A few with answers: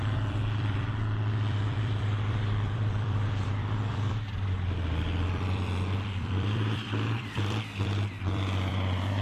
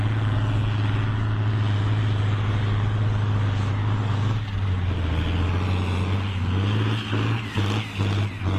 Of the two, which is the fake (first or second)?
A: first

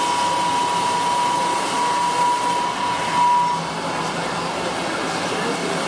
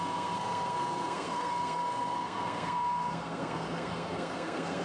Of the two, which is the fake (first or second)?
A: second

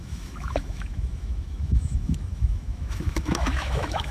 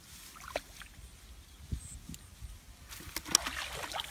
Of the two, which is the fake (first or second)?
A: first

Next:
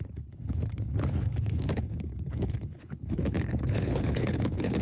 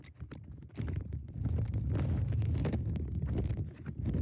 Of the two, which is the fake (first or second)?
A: first